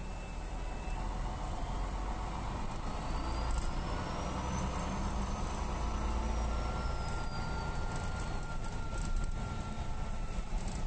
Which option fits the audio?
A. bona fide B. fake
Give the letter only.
A